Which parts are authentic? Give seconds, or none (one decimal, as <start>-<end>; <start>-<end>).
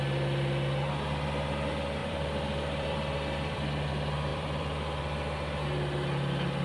0.0-2.0; 3.9-4.3; 5.0-6.6